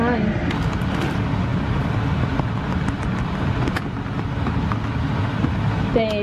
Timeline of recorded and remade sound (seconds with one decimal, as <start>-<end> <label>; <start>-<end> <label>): 0.0-6.2 recorded